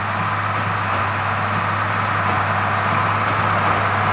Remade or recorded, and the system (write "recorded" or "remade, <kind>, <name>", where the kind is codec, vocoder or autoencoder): recorded